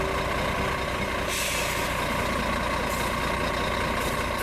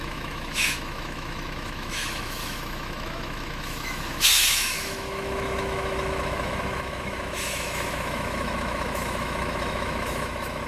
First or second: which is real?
first